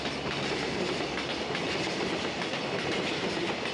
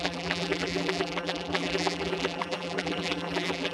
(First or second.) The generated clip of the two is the second